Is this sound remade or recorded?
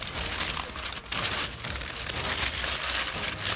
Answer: recorded